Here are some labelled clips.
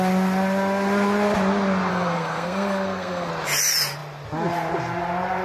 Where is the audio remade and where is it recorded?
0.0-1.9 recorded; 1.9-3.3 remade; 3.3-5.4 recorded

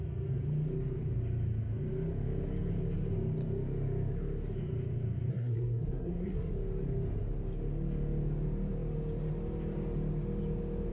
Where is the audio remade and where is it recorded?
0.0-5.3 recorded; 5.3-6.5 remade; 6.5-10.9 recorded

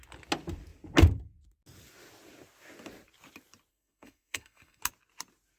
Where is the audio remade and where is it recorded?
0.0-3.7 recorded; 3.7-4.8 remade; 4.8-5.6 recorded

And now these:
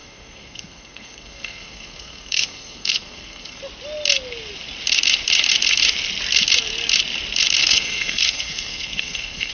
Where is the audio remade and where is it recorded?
0.0-3.6 remade; 3.6-7.6 recorded; 7.6-9.5 remade

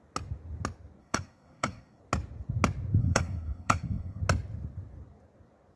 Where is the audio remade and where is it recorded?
0.0-1.0 recorded; 1.0-2.0 remade; 2.0-3.0 recorded; 3.0-4.2 remade; 4.2-5.8 recorded

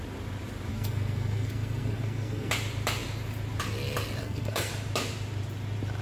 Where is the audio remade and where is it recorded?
0.0-0.7 recorded; 0.7-2.5 remade; 2.5-4.2 recorded; 4.2-4.7 remade; 4.7-6.0 recorded